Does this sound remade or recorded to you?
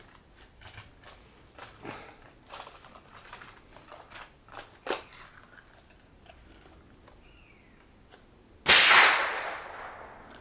recorded